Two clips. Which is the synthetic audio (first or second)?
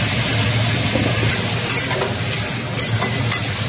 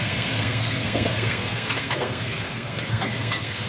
second